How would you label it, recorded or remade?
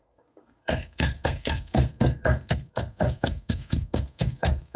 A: remade